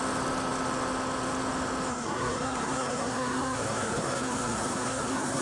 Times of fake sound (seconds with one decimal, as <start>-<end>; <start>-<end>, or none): 1.9-5.4